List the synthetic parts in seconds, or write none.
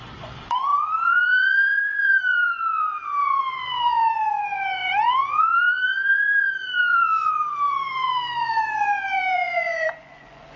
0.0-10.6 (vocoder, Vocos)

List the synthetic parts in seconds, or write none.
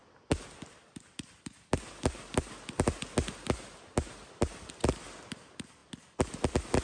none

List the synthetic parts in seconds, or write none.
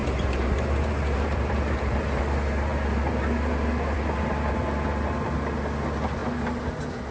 0.0-2.2 (vocoder, BigVGAN v2)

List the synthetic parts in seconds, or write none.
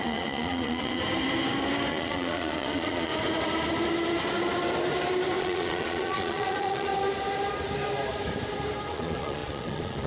0.0-1.0 (vocoder, Vocos); 1.9-3.1; 5.4-6.9; 8.9-10.1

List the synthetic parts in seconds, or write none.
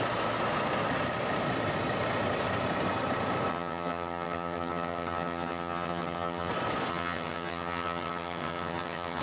3.5-6.5 (vocoder, HiFi-GAN); 6.9-9.2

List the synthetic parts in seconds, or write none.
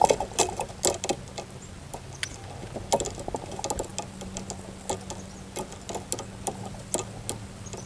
none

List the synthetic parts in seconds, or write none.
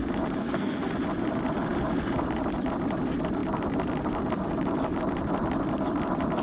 0.4-0.9 (codec, SNAC)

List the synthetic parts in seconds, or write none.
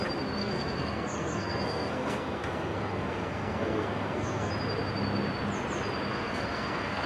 0.4-4.5 (codec, SNAC); 6.1-7.1